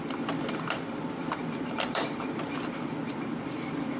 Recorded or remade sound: remade